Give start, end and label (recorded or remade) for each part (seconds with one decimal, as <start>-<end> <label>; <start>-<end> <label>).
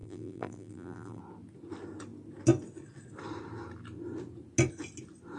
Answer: 0.0-1.2 remade; 1.2-5.4 recorded